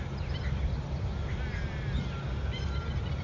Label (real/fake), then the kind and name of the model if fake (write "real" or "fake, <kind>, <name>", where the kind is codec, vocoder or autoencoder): real